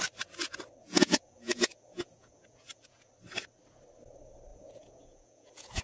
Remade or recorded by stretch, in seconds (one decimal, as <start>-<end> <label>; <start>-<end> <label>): 0.0-0.8 recorded; 0.8-3.1 remade; 3.1-4.5 recorded; 4.5-5.8 remade